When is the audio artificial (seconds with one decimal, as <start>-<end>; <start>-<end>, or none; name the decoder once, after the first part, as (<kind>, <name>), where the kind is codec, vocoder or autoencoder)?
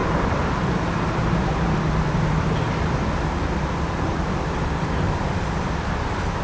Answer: none